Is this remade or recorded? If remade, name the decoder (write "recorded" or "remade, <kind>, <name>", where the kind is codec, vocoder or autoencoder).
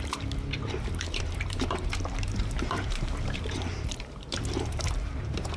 remade, vocoder, BigVGAN v2